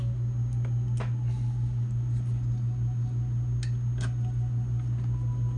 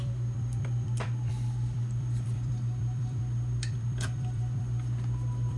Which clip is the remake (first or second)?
second